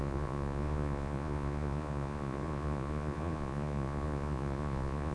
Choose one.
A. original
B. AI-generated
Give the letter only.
B